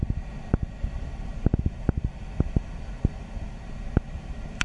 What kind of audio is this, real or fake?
real